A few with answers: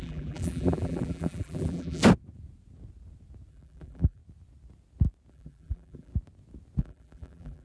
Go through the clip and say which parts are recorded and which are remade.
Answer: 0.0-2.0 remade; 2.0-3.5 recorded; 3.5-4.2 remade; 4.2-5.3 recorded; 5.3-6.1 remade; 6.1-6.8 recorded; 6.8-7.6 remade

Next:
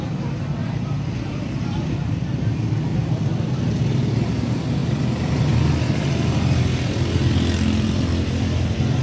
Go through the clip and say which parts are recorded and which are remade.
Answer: 0.0-0.6 recorded; 0.6-2.5 remade; 2.5-2.9 recorded; 2.9-3.8 remade; 3.8-9.0 recorded

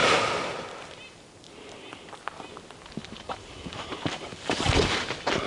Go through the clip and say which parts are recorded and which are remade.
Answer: 0.0-3.0 recorded; 3.0-5.1 remade; 5.1-5.5 recorded

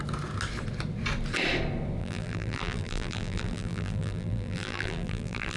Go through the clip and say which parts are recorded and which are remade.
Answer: 0.0-2.0 recorded; 2.0-5.6 remade

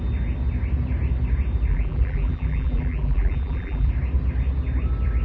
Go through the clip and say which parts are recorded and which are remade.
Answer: 0.0-1.7 recorded; 1.7-3.9 remade; 3.9-5.2 recorded

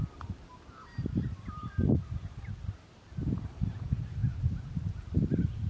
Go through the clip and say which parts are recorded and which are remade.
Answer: 0.0-4.2 remade; 4.2-4.7 recorded; 4.7-5.7 remade